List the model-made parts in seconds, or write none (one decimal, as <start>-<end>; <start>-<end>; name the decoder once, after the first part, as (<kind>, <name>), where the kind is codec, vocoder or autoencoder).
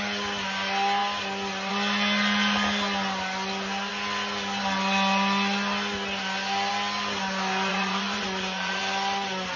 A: 7.7-8.8 (vocoder, Vocos)